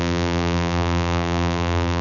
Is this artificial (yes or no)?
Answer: yes